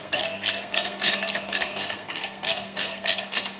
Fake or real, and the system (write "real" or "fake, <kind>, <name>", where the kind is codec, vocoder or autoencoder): fake, codec, SNAC